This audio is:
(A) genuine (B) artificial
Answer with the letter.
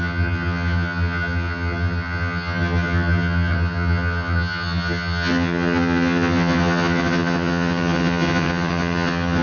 B